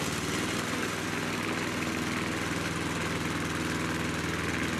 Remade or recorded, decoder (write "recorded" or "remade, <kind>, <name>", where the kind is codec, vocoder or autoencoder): recorded